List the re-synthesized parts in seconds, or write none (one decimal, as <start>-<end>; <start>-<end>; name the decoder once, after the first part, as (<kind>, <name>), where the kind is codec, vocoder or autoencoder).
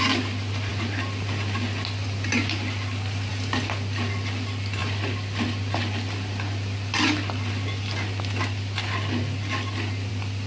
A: none